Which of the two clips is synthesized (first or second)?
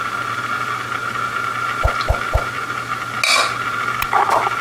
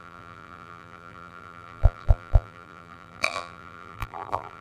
second